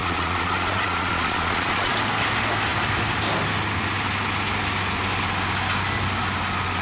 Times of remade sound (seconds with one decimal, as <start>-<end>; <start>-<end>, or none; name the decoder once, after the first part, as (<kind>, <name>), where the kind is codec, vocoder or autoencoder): 0.0-1.9 (vocoder, Vocos)